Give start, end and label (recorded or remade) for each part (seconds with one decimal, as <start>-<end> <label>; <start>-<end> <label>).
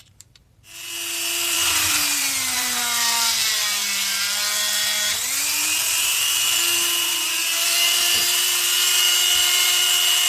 0.0-0.4 remade; 0.4-1.3 recorded; 1.3-10.3 remade